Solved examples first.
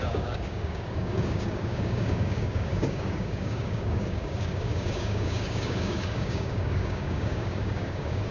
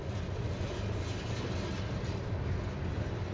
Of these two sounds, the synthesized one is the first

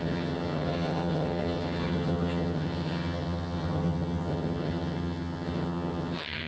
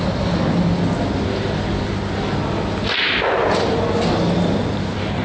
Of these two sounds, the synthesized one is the first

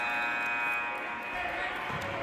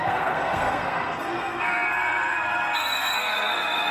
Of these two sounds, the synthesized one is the second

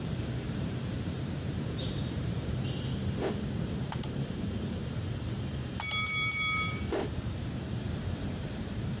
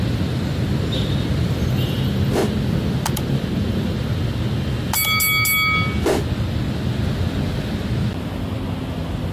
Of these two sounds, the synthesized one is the first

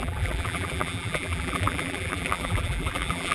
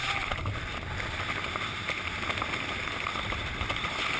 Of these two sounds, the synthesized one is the first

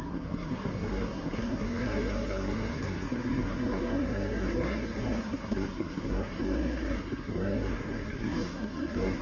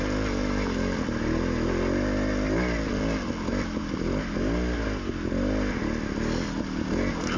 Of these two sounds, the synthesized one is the first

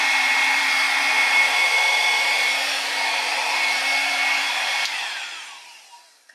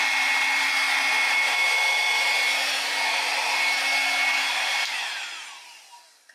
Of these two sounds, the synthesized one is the first